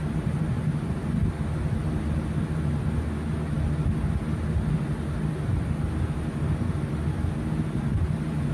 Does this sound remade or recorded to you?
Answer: recorded